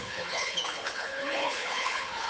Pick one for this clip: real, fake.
fake